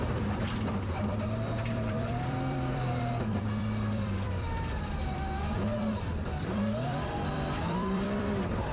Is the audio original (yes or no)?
no